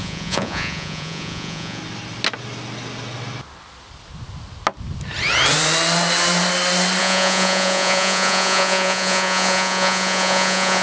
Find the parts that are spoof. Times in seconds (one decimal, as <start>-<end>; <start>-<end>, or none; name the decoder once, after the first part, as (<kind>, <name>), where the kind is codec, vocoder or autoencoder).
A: 0.0-1.8 (vocoder, Vocos); 7.0-10.8